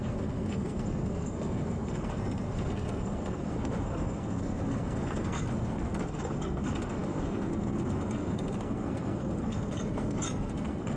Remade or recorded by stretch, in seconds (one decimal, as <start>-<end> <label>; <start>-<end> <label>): 0.0-11.0 remade